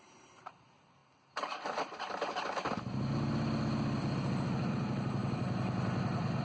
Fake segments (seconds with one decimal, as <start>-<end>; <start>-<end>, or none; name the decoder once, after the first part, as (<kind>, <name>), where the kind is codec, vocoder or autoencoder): 0.0-1.0 (vocoder, BigVGAN v2); 4.7-5.2; 6.0-6.4